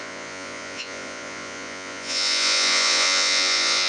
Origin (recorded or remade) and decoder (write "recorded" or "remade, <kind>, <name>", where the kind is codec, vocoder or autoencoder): remade, vocoder, Vocos